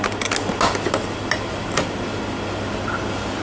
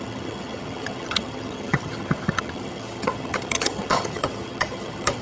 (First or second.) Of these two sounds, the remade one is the second